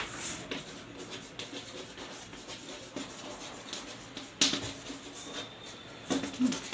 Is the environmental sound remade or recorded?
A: recorded